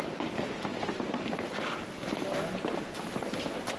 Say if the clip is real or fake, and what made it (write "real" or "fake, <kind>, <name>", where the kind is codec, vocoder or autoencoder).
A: real